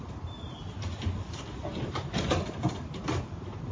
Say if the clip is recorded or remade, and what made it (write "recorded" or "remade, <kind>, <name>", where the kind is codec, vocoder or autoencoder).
recorded